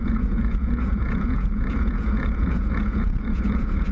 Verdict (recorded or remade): remade